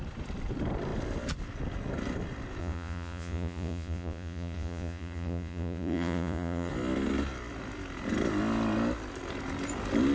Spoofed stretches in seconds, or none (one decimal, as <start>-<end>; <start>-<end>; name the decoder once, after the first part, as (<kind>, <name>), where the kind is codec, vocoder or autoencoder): 2.6-6.7 (vocoder, Vocos)